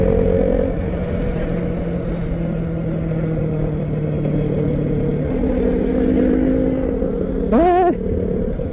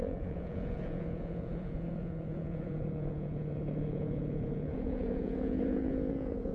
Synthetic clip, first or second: second